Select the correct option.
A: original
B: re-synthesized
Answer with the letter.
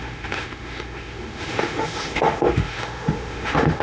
B